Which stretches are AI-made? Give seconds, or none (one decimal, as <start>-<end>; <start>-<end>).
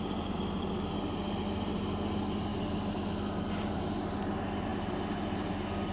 none